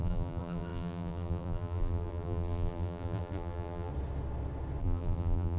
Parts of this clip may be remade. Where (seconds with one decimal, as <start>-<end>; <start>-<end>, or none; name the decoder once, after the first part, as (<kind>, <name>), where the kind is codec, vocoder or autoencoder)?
0.0-3.9 (vocoder, BigVGAN v2); 4.8-5.6